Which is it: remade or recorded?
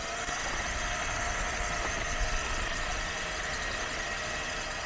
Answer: recorded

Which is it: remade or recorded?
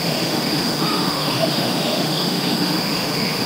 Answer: remade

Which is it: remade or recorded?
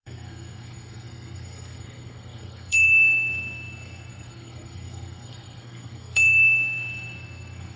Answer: remade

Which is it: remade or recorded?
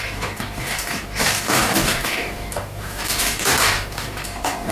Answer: remade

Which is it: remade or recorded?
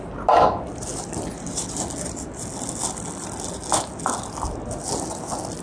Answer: recorded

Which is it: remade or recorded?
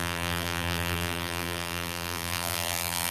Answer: remade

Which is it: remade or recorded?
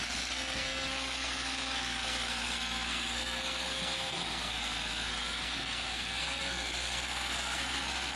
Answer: remade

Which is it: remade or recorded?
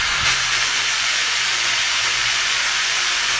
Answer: remade